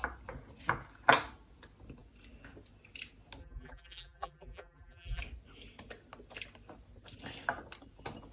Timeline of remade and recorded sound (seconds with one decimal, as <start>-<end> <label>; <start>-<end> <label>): 0.0-3.4 recorded; 3.4-5.2 remade; 5.2-8.3 recorded